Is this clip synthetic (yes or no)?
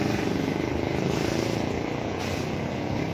no